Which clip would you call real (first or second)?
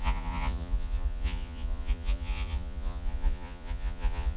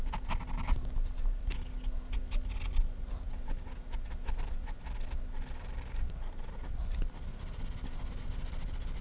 second